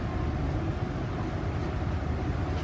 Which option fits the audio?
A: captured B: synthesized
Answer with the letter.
A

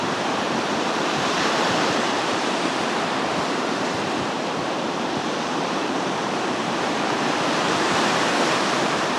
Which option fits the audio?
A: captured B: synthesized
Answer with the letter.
B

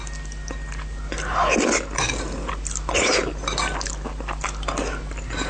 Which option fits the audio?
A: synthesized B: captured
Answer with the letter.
B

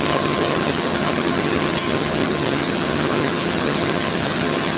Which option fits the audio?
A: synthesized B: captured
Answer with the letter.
A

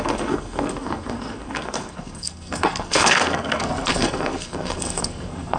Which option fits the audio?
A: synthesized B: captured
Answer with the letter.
A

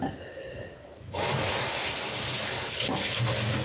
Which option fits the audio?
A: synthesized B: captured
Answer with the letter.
B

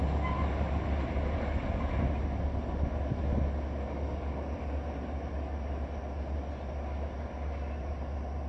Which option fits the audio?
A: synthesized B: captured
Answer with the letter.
B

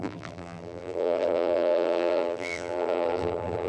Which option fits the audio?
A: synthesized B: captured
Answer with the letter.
A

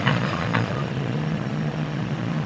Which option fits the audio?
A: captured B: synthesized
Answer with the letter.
B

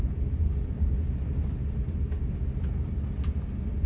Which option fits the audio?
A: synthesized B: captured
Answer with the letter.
B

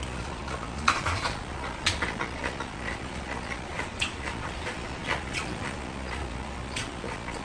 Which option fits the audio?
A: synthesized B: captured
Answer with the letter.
A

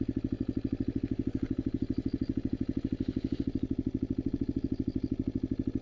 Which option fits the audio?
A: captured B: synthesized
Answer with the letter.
A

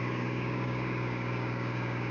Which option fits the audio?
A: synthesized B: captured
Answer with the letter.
A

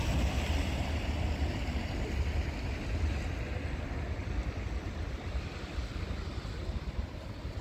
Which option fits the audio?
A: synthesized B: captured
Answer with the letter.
B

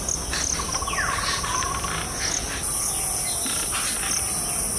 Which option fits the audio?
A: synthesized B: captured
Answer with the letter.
B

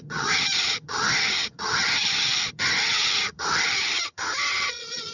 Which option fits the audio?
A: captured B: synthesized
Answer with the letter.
B